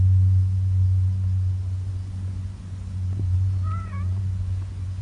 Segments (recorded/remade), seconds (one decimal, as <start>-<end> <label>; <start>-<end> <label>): 0.0-1.9 recorded; 1.9-5.0 remade